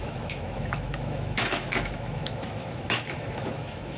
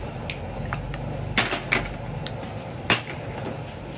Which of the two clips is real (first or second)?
second